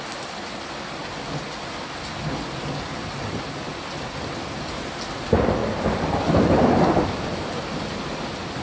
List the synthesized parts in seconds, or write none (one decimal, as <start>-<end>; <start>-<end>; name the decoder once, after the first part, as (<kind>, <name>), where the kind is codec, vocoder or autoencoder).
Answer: 5.6-7.5 (vocoder, BigVGAN v2)

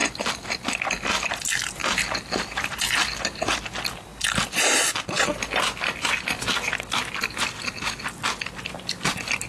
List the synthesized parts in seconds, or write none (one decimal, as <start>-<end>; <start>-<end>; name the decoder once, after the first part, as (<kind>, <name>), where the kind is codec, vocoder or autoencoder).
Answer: 1.8-3.6 (vocoder, BigVGAN v2)